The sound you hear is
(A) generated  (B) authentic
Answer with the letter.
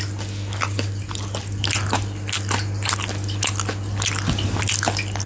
B